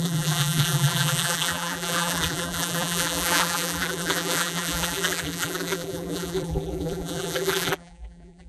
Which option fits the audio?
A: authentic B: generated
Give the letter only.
B